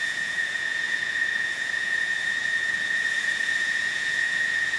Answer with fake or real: fake